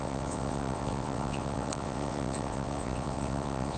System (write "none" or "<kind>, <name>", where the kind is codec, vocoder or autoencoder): vocoder, WaveNeXt